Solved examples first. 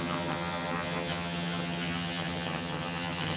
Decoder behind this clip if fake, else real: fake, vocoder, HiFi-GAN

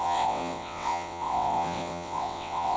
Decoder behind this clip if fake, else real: fake, vocoder, WaveNeXt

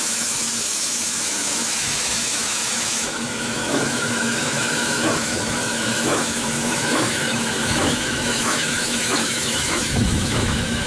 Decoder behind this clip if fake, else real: fake, autoencoder, DAC-VAE